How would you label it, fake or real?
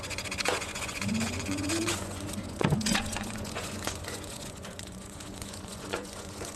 fake